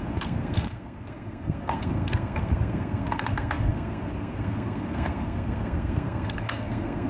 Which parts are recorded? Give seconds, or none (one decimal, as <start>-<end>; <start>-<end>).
none